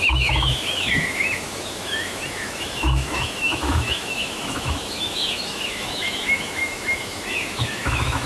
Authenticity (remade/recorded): remade